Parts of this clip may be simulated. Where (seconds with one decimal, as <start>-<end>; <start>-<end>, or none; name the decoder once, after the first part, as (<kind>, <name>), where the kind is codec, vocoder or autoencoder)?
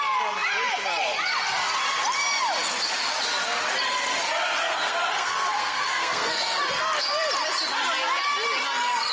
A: 4.6-6.6 (codec, SNAC)